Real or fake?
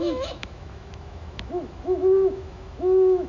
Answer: fake